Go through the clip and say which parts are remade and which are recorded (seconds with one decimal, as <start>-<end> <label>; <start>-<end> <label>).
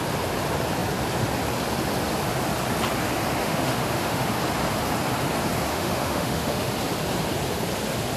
0.0-3.4 recorded; 3.4-4.3 remade; 4.3-5.7 recorded; 5.7-6.7 remade; 6.7-8.2 recorded